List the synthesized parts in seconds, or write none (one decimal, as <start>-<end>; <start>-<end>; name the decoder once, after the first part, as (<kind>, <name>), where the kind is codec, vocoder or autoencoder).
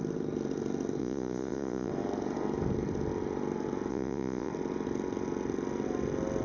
1.0-1.9 (vocoder, Vocos); 3.9-4.5